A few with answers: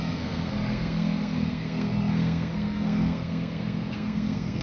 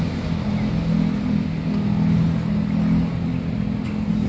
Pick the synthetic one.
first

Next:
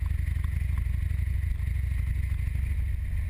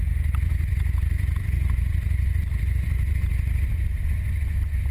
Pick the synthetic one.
second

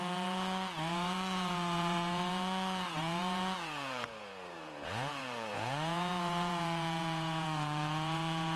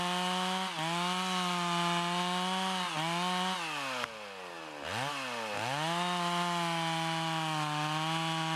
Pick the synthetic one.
first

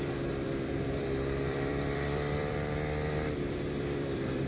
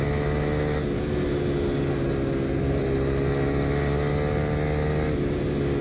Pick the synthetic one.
first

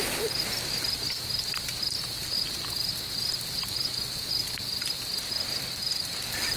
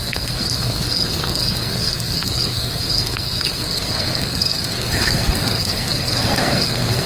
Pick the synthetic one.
second